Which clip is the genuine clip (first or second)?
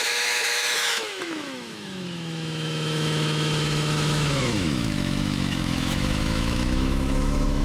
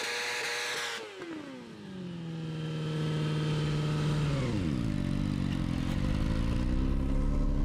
second